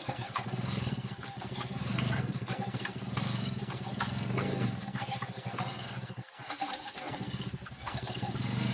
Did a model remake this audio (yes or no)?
yes